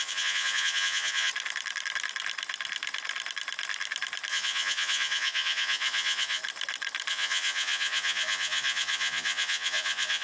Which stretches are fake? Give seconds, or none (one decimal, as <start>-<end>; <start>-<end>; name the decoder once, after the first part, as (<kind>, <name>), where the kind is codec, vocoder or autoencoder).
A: 0.0-1.3 (vocoder, Vocos); 4.3-6.4; 7.1-10.2